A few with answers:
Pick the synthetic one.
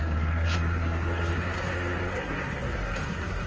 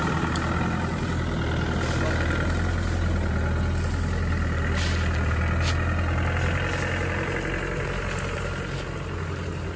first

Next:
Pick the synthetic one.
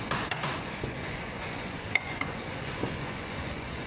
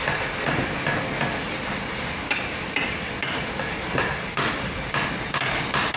first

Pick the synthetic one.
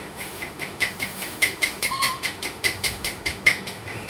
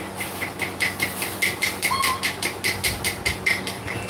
first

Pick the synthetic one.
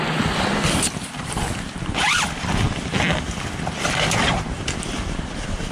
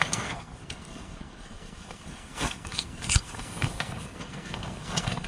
second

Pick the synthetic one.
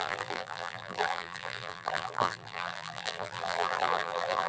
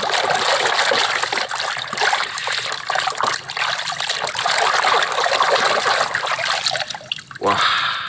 first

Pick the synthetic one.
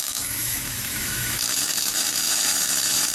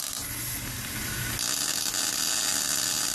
first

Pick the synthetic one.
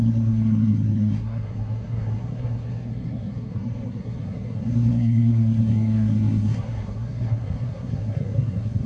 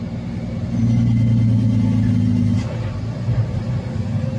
first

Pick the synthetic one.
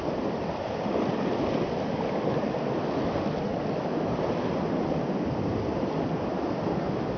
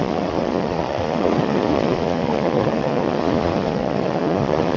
second